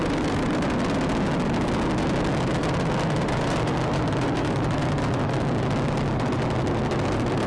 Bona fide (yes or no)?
yes